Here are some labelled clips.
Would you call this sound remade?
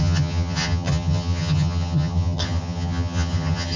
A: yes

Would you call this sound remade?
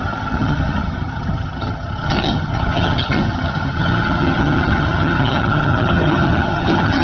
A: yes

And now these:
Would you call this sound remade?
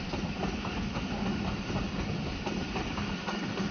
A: no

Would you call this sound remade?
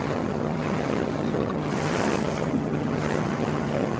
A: yes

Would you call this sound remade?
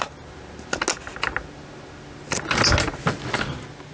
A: no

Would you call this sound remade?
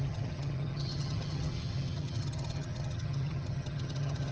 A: yes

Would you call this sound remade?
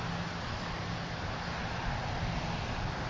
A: no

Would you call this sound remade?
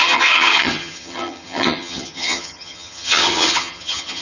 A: yes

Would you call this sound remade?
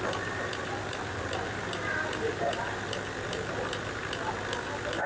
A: no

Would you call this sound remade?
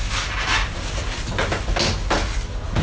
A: no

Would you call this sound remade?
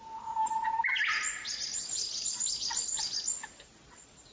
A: no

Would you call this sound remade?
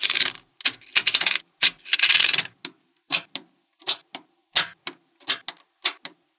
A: no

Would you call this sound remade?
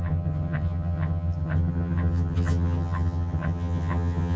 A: yes